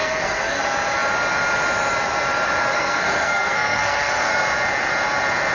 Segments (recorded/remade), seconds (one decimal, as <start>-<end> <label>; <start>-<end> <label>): 0.0-0.6 remade; 0.6-2.7 recorded; 2.7-4.3 remade; 4.3-5.5 recorded